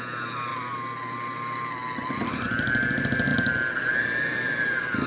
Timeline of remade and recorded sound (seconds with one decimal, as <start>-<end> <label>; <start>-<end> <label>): 0.0-3.3 recorded; 3.3-5.1 remade